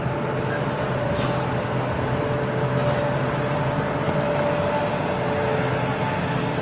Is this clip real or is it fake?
real